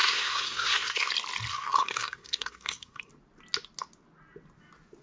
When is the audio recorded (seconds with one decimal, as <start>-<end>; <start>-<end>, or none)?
1.1-1.5; 3.1-5.0